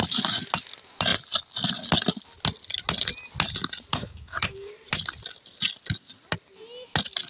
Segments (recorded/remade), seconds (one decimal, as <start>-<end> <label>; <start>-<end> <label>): 0.0-3.9 recorded; 3.9-4.7 remade; 4.7-7.3 recorded